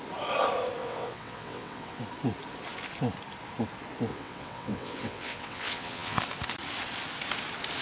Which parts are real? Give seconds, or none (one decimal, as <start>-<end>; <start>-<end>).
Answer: 0.0-0.8; 2.0-4.1; 6.2-7.8